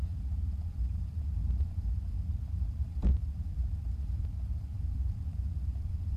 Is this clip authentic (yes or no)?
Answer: no